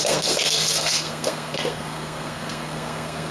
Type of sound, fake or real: fake